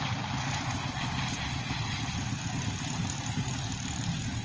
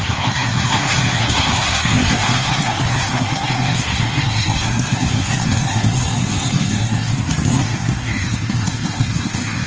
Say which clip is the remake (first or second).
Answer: second